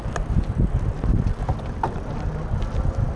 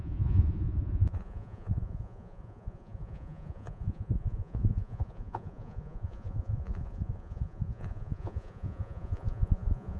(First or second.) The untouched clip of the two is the first